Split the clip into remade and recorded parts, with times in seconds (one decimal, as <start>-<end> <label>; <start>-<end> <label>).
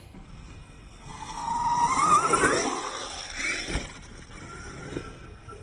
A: 0.0-1.5 remade; 1.5-4.9 recorded; 4.9-5.6 remade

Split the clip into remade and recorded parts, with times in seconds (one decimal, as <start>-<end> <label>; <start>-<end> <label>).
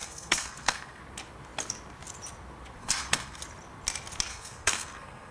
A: 0.0-1.0 remade; 1.0-2.8 recorded; 2.8-3.4 remade; 3.4-4.3 recorded; 4.3-5.3 remade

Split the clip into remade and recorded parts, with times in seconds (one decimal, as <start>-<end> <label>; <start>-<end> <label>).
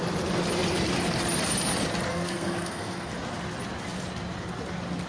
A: 0.0-2.1 recorded; 2.1-3.1 remade; 3.1-5.1 recorded